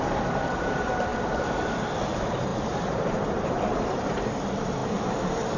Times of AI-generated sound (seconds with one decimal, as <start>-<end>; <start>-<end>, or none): 0.0-5.6